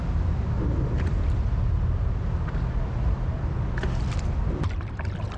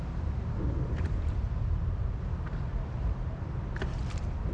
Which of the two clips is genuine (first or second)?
first